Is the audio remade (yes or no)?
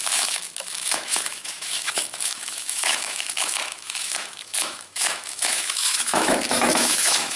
yes